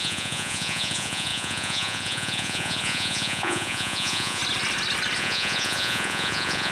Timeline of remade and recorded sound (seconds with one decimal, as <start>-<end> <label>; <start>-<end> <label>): 0.0-4.4 remade; 4.4-5.2 recorded; 5.2-6.7 remade

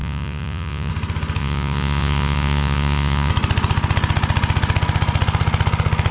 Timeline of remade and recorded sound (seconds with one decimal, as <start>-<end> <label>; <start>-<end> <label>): 0.0-0.9 remade; 0.9-1.4 recorded; 1.4-3.3 remade; 3.3-6.1 recorded